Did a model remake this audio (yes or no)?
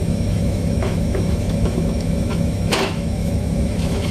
yes